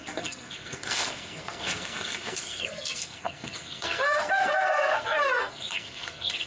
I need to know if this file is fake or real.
fake